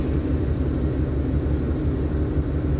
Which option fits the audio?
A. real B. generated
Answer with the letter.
A